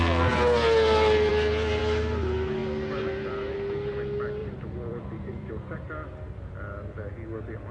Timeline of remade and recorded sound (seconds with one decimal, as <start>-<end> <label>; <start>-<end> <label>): 0.0-4.4 recorded; 4.4-5.5 remade; 5.5-7.7 recorded

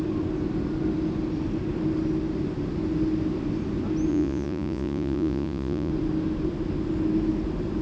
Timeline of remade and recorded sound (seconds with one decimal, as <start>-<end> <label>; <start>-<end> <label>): 0.0-4.1 recorded; 4.1-5.9 remade; 5.9-7.8 recorded

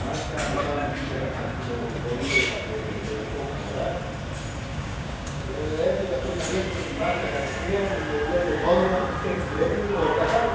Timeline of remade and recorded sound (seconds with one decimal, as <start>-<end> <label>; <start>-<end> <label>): 0.0-4.7 recorded; 4.7-6.4 remade; 6.4-10.5 recorded

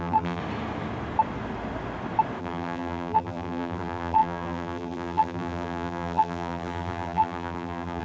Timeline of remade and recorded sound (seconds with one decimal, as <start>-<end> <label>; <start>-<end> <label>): 0.0-0.4 remade; 0.4-2.4 recorded; 2.4-8.0 remade

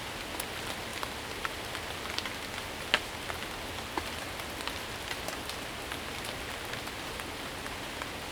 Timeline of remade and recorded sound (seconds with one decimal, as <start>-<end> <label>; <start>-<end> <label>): 0.0-8.3 recorded